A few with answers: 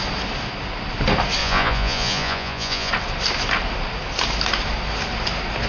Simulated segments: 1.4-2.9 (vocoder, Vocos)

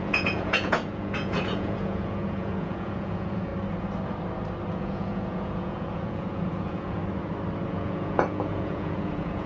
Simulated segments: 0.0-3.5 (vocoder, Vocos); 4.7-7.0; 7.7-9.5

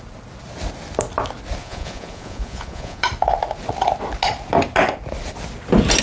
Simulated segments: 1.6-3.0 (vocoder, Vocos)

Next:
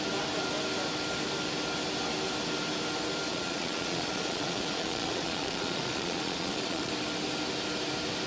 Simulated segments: 3.3-6.9 (vocoder, Vocos)

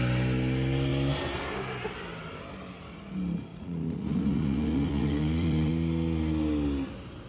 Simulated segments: 3.5-5.7 (vocoder, Vocos)

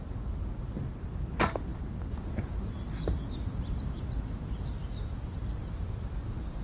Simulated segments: none

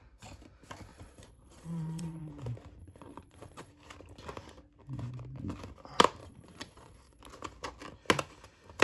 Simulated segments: 0.9-2.3 (vocoder, Vocos); 2.8-3.7; 6.2-7.2